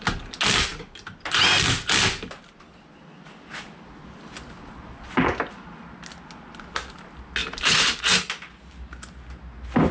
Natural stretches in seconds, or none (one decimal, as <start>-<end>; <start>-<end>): 0.0-9.9